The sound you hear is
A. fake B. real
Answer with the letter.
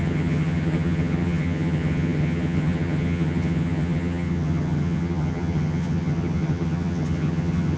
A